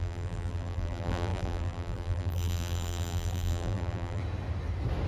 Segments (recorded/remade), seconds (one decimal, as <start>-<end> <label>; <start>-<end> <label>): 0.0-4.2 remade; 4.2-5.1 recorded